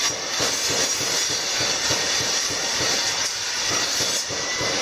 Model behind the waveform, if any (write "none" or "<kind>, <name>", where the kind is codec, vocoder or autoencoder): vocoder, BigVGAN v2